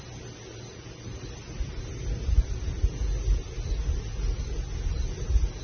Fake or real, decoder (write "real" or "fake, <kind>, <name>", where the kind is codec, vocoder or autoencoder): real